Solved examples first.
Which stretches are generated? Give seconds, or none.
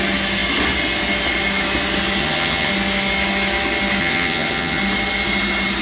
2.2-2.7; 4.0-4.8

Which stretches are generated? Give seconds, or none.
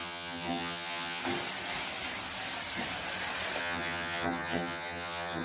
0.0-1.2; 3.6-5.4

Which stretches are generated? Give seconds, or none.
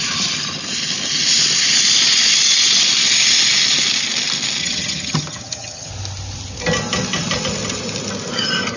4.6-5.9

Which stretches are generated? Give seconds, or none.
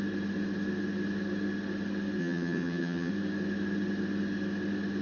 2.2-3.1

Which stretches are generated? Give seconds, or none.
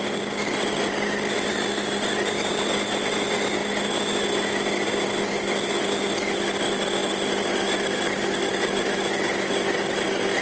none